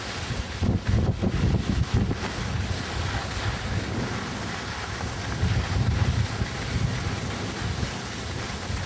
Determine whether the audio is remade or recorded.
recorded